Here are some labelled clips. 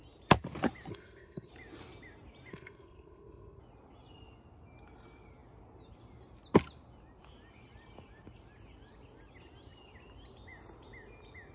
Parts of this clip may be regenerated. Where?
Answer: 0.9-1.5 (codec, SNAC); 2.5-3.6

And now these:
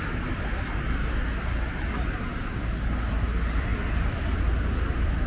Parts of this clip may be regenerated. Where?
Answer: none